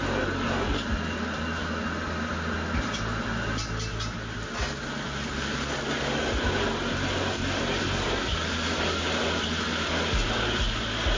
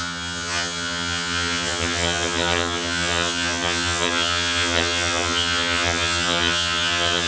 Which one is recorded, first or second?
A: first